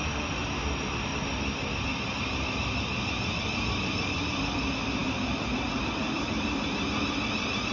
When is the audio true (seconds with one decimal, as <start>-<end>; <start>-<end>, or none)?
0.0-7.7